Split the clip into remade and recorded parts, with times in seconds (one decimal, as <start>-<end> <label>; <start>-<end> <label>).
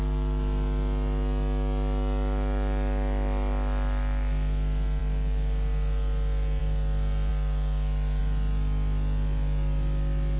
0.0-10.4 recorded